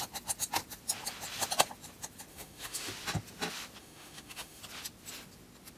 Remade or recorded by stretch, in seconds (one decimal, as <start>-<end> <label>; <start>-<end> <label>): 0.0-2.3 recorded; 2.3-2.9 remade; 2.9-3.8 recorded; 3.8-4.6 remade; 4.6-5.8 recorded